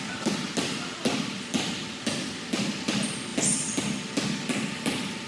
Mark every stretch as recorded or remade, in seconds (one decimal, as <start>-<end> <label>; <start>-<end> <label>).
0.0-5.3 recorded